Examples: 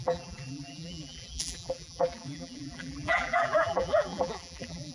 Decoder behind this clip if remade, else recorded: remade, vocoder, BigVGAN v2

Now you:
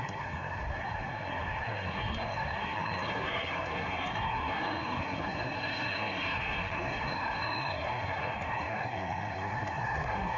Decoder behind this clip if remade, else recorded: remade, codec, SNAC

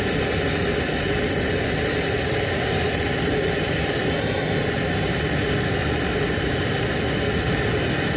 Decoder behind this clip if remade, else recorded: recorded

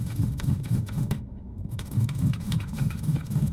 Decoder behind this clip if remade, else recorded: remade, autoencoder, DAC-VAE